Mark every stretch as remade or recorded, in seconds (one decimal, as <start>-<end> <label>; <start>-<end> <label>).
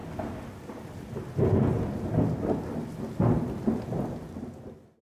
0.0-5.0 recorded